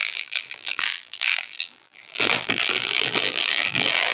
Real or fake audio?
fake